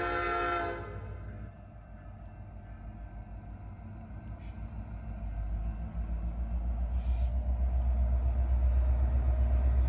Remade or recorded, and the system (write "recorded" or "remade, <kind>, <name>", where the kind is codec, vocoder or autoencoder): recorded